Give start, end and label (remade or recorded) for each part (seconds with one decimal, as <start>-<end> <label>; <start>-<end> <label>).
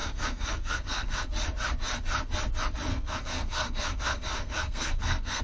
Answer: 0.0-1.2 remade; 1.2-2.9 recorded; 2.9-5.4 remade